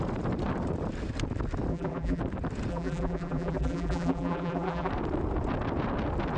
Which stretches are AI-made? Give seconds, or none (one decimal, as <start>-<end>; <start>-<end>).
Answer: 1.7-2.2; 2.7-4.9